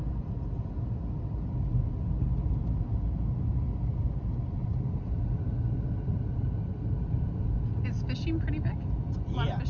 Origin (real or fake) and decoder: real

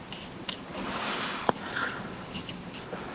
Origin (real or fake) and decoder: real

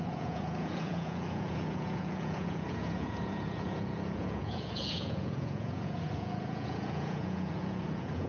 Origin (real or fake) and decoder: fake, vocoder, Vocos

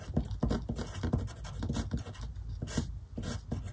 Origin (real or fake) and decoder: real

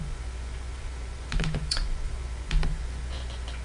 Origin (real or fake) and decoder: fake, vocoder, Vocos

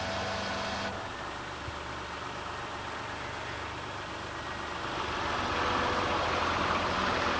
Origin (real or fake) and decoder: real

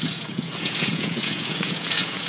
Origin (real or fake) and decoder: fake, vocoder, Vocos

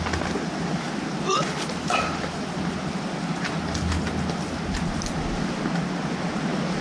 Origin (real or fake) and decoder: real